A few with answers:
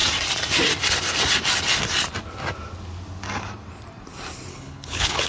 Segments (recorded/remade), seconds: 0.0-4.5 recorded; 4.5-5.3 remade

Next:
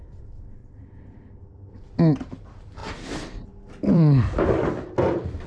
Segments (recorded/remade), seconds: 0.0-0.6 remade; 0.6-2.2 recorded; 2.2-5.5 remade